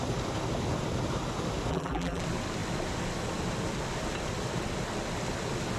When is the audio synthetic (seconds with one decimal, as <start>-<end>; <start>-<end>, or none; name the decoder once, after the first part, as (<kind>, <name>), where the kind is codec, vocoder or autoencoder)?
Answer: 1.7-2.2 (vocoder, BigVGAN v2)